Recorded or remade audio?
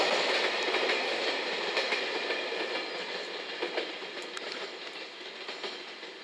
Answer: recorded